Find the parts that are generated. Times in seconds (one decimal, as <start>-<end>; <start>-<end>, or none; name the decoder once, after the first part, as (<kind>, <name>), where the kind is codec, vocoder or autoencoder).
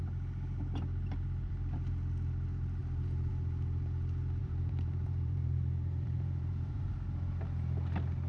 2.8-3.3 (vocoder, BigVGAN v2); 4.4-6.9